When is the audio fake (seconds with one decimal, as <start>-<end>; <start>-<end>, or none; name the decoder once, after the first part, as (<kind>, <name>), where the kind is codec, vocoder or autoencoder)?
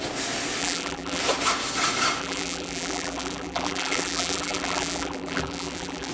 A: 0.6-1.2 (vocoder, BigVGAN v2); 2.2-6.1